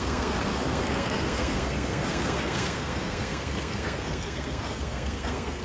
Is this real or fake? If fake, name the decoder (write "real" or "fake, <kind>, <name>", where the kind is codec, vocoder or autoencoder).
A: fake, codec, SNAC